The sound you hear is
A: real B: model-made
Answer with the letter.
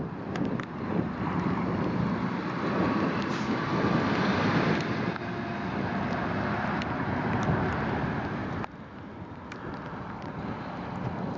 A